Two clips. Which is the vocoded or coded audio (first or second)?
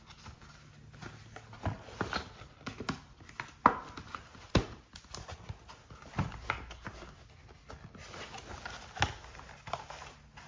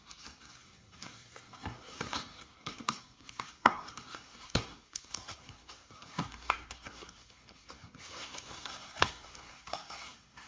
second